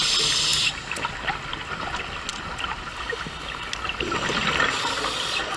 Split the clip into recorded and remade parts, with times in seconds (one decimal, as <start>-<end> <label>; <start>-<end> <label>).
0.0-0.5 recorded; 0.5-1.1 remade; 1.1-2.3 recorded; 2.3-3.4 remade; 3.4-5.6 recorded